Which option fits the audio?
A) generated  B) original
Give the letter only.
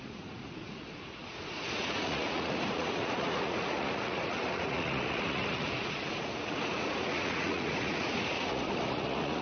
A